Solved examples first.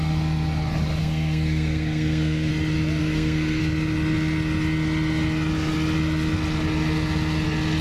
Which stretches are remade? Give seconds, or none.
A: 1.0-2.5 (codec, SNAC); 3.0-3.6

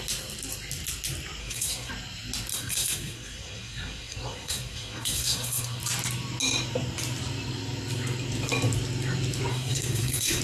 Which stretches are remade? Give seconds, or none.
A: 1.4-1.9 (codec, SNAC); 2.5-5.8; 9.5-10.4

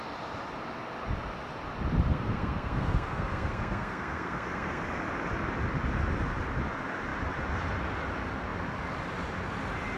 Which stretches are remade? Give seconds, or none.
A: 2.1-4.8 (codec, SNAC)

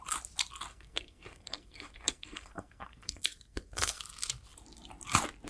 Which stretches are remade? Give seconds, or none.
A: 0.7-4.0 (codec, SNAC)